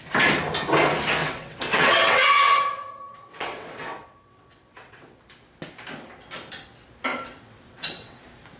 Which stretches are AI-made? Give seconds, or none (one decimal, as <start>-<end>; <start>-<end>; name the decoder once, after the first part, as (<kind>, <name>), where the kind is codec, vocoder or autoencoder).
1.2-5.2 (vocoder, WaveNeXt); 7.1-8.2